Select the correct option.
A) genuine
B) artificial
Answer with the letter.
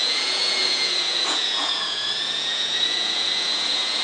B